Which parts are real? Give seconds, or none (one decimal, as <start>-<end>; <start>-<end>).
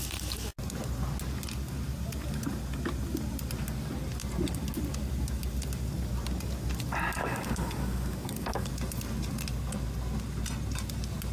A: 0.0-7.2; 8.7-11.3